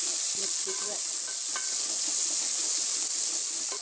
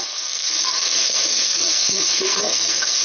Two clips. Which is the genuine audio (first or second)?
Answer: first